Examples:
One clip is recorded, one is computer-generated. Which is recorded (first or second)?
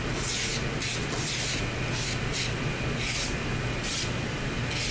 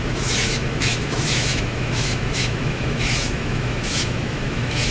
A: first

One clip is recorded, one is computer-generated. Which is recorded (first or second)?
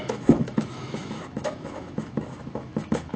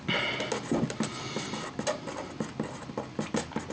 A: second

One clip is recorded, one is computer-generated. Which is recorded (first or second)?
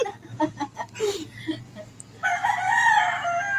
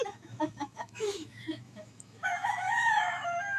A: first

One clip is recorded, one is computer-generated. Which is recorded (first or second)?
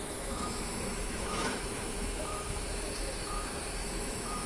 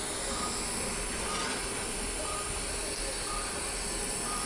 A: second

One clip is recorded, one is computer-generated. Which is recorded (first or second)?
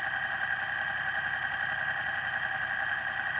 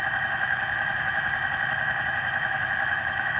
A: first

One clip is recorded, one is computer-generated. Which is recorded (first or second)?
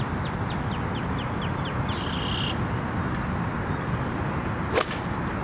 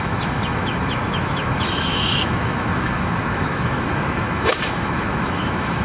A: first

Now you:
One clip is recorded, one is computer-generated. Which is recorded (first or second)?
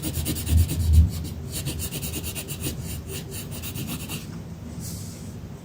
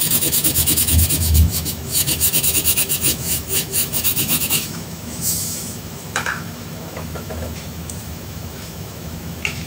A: first